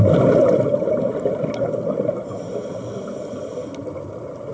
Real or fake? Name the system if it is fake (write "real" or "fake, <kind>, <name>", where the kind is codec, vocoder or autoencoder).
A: real